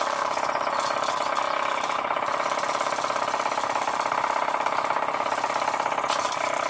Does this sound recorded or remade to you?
recorded